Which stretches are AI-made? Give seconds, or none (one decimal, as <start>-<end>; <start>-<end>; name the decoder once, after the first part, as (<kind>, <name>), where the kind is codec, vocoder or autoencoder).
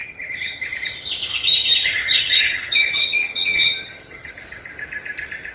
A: 0.0-0.6 (vocoder, HiFi-GAN); 1.3-4.3